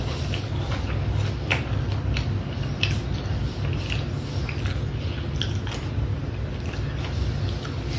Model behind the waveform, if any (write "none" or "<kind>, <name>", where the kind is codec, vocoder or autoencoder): none